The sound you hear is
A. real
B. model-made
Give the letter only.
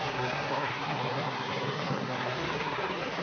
B